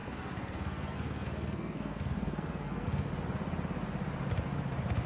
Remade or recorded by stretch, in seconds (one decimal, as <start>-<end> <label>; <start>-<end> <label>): 0.0-3.1 remade; 3.1-5.1 recorded